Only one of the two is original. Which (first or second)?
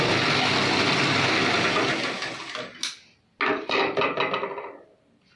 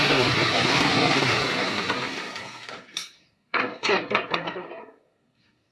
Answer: first